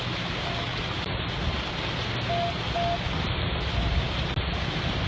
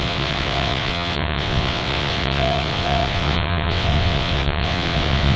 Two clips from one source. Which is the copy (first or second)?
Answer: second